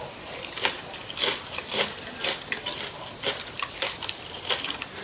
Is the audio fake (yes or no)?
yes